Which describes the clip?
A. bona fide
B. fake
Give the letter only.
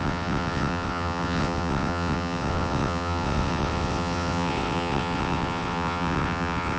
B